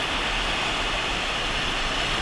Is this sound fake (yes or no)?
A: no